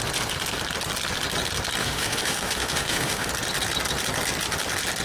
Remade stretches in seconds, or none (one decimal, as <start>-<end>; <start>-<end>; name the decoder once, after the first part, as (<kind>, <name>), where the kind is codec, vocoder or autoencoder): 1.8-3.3 (autoencoder, DAC-VAE)